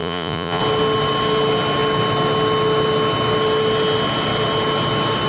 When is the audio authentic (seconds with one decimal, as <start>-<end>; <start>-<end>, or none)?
0.6-5.3